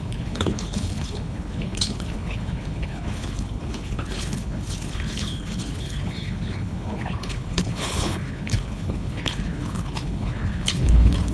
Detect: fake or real fake